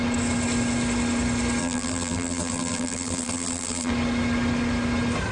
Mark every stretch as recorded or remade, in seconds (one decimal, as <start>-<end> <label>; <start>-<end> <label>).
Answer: 0.0-1.6 recorded; 1.6-3.9 remade; 3.9-5.3 recorded

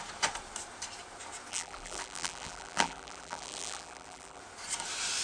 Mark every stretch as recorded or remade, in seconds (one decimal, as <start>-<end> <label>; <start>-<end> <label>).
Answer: 0.0-1.5 recorded; 1.5-4.4 remade; 4.4-5.2 recorded

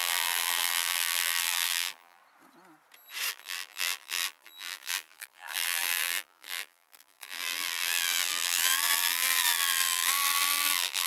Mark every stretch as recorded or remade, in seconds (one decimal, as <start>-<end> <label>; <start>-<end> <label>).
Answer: 0.0-2.2 remade; 2.2-3.3 recorded; 3.3-11.1 remade

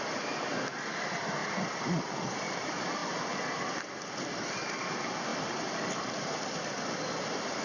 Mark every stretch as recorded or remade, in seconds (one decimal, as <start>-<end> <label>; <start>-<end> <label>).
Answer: 0.0-1.4 recorded; 1.4-2.5 remade; 2.5-5.3 recorded; 5.3-6.9 remade; 6.9-7.6 recorded

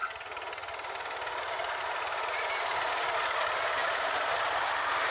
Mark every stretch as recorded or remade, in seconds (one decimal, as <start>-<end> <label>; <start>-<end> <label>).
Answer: 0.0-3.8 recorded; 3.8-4.4 remade; 4.4-5.1 recorded

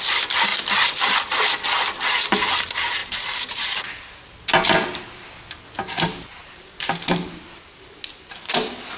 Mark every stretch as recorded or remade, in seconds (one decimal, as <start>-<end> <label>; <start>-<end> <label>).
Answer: 0.0-3.0 recorded; 3.0-4.2 remade; 4.2-6.4 recorded; 6.4-7.3 remade; 7.3-9.0 recorded

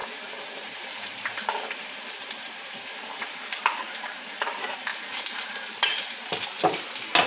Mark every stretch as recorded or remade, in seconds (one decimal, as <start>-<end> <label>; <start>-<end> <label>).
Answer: 0.0-4.4 remade; 4.4-4.9 recorded; 4.9-6.8 remade; 6.8-7.3 recorded